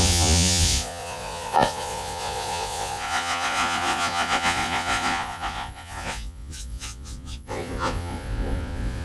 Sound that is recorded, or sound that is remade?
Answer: remade